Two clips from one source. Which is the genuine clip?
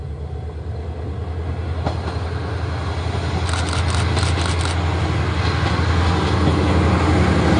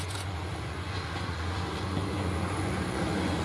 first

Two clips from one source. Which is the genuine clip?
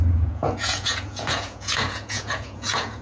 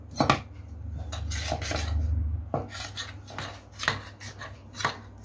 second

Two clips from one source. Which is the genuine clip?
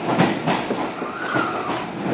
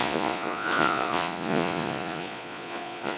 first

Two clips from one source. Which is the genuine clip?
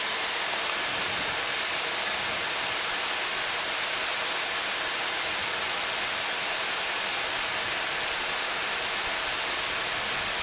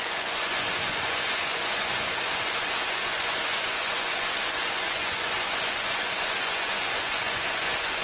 first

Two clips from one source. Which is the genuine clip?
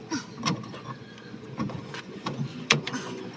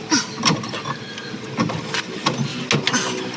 second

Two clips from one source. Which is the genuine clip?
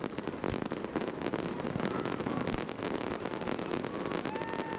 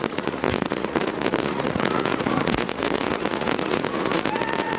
first